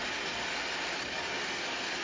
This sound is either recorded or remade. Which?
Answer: recorded